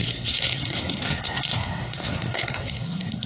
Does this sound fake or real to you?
fake